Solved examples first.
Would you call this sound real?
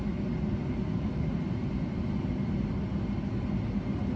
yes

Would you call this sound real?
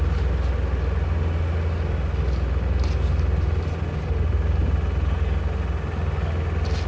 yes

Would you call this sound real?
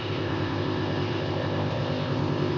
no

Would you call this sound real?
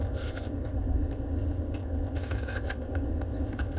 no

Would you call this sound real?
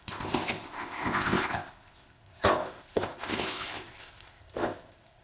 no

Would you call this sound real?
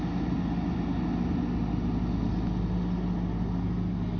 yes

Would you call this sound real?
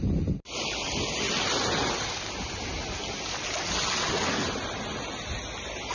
yes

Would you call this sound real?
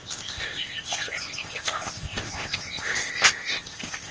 no